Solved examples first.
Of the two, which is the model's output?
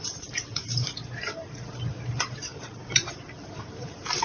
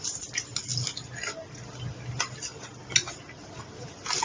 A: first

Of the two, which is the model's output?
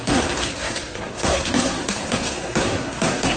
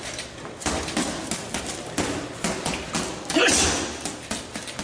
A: first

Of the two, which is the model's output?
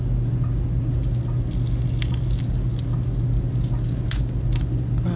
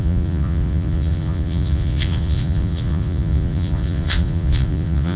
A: second